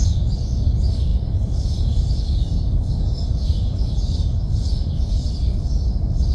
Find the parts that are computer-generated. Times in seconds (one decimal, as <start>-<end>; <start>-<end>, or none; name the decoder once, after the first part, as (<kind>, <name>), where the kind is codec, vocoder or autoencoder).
0.0-6.3 (codec, DAC)